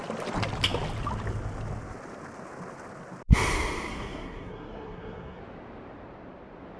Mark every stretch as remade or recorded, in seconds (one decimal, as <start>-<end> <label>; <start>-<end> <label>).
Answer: 0.0-3.9 recorded; 3.9-5.4 remade; 5.4-6.8 recorded